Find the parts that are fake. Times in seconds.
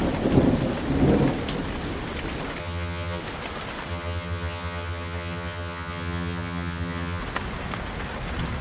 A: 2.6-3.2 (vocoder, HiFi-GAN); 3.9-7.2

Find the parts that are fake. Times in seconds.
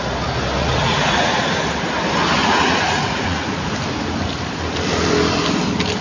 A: 0.6-1.6 (vocoder, Vocos); 2.4-3.7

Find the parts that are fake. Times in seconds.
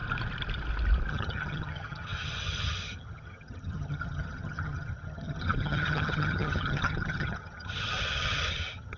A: 1.1-9.0 (vocoder, HiFi-GAN)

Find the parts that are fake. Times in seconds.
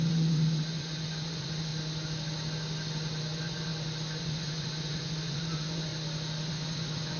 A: 0.0-1.7 (vocoder, Vocos); 3.2-3.7; 4.2-5.9; 6.5-7.2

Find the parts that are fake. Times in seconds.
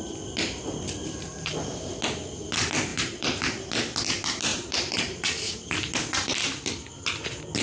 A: 1.0-1.9 (vocoder, BigVGAN v2); 2.9-3.7; 4.5-5.7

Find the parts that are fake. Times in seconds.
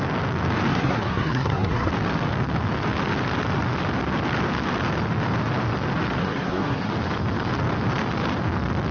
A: 0.7-1.9 (codec, SNAC); 6.2-6.9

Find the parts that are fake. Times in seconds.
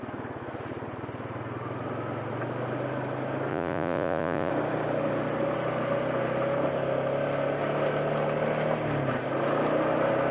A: 3.5-4.5 (vocoder, Vocos)